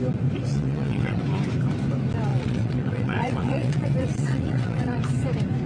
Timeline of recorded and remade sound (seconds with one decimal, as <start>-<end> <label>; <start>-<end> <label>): 0.0-0.5 recorded; 0.5-1.2 remade; 1.2-2.3 recorded; 2.3-5.0 remade; 5.0-5.7 recorded